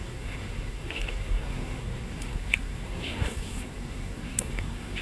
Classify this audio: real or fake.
fake